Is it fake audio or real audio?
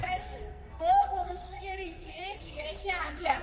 fake